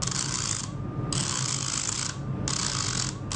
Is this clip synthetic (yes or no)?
no